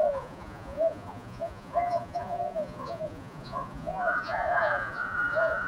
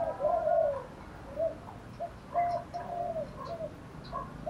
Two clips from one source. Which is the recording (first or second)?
second